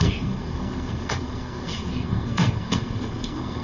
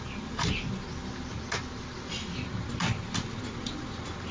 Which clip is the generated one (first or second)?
first